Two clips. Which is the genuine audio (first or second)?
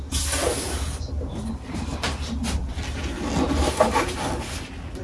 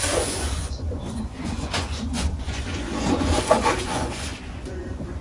first